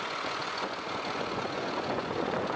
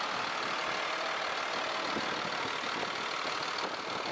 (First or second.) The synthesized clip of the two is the first